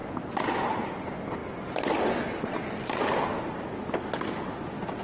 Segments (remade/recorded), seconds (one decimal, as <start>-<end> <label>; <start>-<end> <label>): 0.0-5.0 recorded